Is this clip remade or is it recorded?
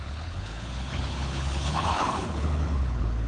remade